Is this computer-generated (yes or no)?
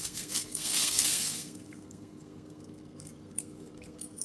yes